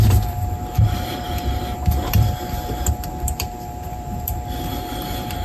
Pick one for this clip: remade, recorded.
remade